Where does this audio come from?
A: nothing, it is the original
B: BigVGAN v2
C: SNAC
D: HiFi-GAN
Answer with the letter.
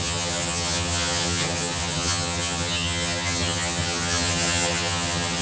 D